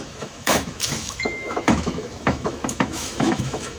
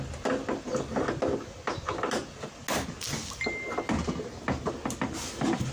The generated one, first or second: first